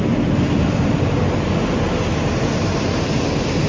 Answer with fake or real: real